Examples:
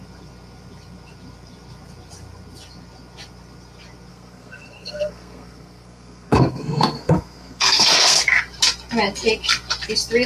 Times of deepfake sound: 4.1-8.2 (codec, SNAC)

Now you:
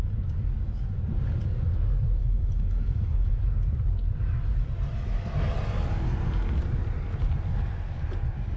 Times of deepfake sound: 2.2-3.4 (autoencoder, DAC-VAE)

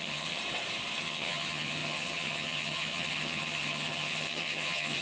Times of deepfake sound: 0.0-0.4 (vocoder, HiFi-GAN); 1.0-5.0

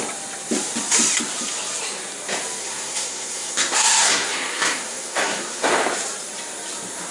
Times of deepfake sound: 2.6-5.7 (codec, SNAC)

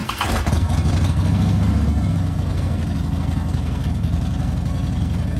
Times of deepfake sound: 0.0-5.4 (codec, SNAC)

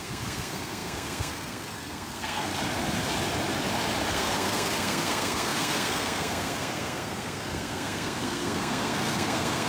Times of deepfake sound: 0.0-2.5 (codec, SNAC); 4.1-9.7

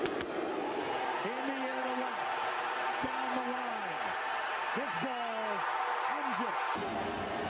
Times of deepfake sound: none

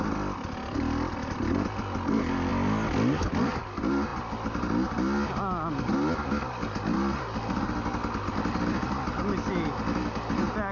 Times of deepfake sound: none